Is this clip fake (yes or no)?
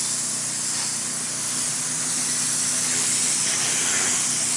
no